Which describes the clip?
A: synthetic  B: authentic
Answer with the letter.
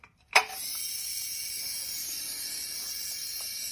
B